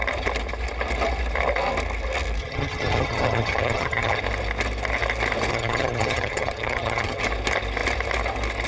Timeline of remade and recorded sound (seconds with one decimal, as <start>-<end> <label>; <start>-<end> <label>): 0.0-2.4 recorded; 2.4-4.2 remade; 4.2-5.5 recorded; 5.5-7.2 remade; 7.2-8.7 recorded